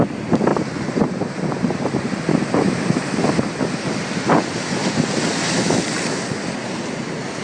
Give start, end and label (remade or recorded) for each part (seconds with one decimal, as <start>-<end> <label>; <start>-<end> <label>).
0.0-0.5 recorded; 0.5-3.3 remade; 3.3-7.4 recorded

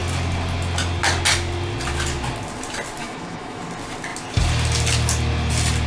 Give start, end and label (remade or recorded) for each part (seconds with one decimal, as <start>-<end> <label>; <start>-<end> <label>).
0.0-3.0 recorded; 3.0-3.6 remade; 3.6-5.9 recorded